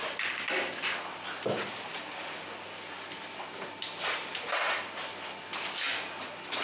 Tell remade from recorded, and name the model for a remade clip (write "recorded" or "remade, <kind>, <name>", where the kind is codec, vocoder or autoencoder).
recorded